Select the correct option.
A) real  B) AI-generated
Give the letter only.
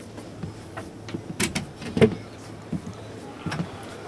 A